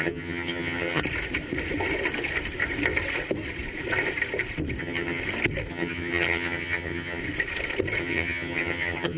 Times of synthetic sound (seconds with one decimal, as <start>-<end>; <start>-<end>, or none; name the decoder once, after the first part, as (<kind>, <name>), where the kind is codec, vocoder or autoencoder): 0.0-1.0 (vocoder, HiFi-GAN); 4.8-5.2; 5.7-7.2; 8.0-9.2